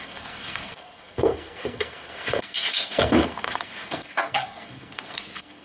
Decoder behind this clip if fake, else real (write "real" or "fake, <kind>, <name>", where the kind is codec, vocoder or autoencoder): fake, codec, SNAC